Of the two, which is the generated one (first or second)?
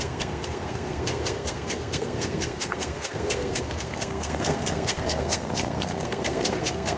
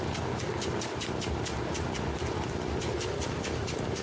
first